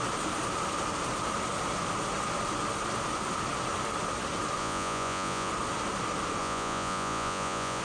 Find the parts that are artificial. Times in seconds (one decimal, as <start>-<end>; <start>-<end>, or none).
4.6-5.5; 6.4-7.8